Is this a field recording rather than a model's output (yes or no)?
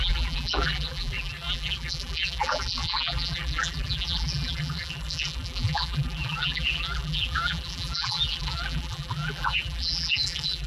no